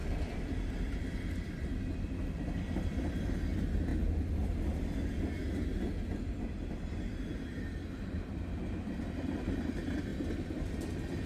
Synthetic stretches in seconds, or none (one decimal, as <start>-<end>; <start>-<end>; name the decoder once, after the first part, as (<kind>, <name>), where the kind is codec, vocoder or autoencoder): 0.0-1.9 (vocoder, BigVGAN v2)